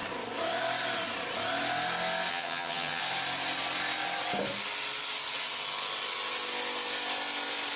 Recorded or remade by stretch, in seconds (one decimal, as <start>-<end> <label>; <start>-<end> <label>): 0.0-2.3 recorded; 2.3-3.0 remade; 3.0-7.8 recorded